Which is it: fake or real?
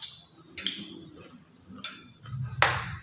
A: real